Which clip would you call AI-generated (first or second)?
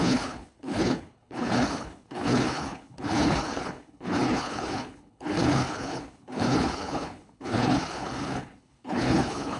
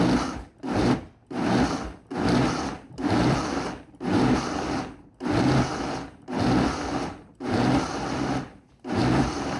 first